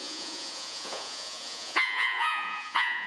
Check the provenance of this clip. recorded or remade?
remade